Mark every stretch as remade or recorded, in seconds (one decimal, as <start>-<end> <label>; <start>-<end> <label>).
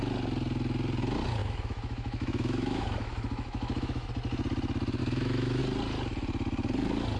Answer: 0.0-1.4 recorded; 1.4-4.1 remade; 4.1-5.0 recorded; 5.0-5.6 remade; 5.6-7.2 recorded